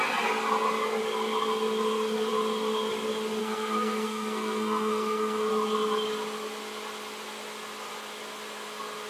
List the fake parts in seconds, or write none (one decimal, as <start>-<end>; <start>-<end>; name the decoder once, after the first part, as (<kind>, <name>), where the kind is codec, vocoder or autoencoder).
3.4-5.5 (codec, SNAC)